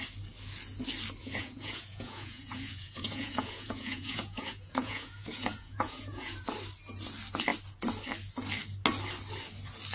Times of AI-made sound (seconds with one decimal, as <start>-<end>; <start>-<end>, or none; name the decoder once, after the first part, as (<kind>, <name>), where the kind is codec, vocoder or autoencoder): 1.2-6.4 (vocoder, Vocos)